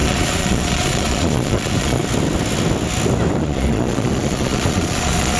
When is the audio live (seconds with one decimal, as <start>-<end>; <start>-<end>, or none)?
2.0-3.4